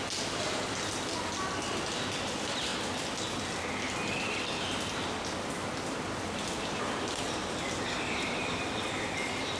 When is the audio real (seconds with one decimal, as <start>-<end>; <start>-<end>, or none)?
0.0-9.6